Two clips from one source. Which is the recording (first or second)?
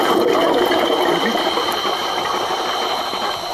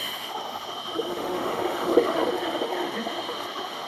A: first